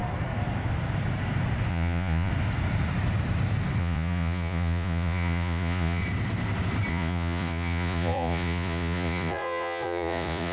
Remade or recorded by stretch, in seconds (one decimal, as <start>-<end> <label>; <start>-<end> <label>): 0.0-1.7 recorded; 1.7-2.3 remade; 2.3-3.8 recorded; 3.8-6.0 remade; 6.0-6.9 recorded; 6.9-10.5 remade